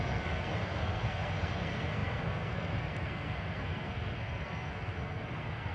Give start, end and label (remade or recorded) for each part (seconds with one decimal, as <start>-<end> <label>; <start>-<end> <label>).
0.0-5.7 remade